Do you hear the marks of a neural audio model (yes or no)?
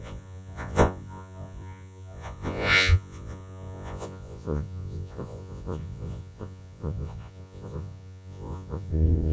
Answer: yes